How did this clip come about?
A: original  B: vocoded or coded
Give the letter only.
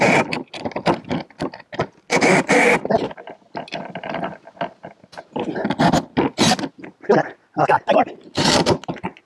A